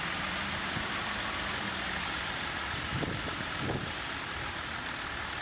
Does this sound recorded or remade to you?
recorded